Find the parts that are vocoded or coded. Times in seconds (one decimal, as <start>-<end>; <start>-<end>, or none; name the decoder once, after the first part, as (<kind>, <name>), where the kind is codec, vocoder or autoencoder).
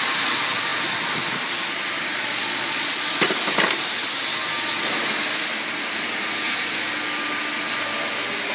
2.1-3.0 (vocoder, Vocos)